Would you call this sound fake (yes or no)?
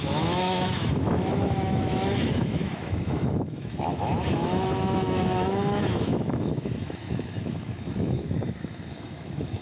yes